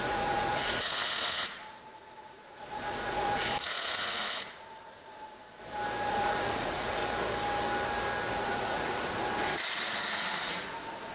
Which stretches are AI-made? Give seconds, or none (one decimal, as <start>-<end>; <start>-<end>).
0.0-5.4; 6.1-7.0; 8.4-11.1